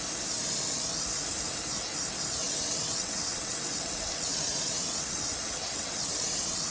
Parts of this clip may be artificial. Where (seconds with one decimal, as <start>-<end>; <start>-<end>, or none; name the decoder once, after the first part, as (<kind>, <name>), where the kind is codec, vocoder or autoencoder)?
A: 2.4-6.7 (vocoder, WaveNeXt)